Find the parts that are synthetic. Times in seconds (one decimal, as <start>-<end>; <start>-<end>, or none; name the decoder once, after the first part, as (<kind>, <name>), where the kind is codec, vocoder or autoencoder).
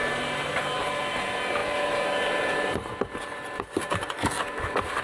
none